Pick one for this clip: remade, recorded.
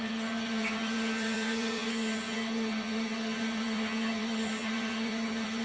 remade